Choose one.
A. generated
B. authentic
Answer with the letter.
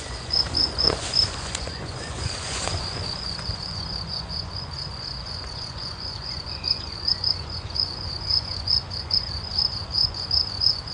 A